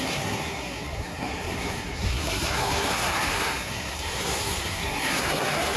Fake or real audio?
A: fake